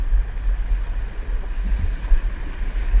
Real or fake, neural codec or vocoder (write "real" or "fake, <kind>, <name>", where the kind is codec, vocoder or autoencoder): real